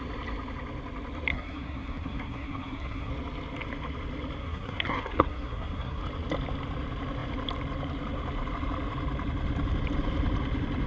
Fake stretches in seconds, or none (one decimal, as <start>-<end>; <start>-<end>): 1.3-3.1; 4.4-6.0